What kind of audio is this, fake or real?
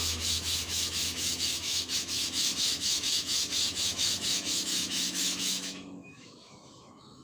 fake